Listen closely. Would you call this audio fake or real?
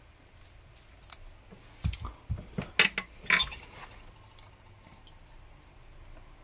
real